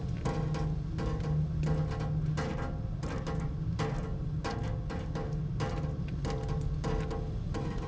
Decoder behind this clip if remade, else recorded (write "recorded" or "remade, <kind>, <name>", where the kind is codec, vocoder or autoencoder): recorded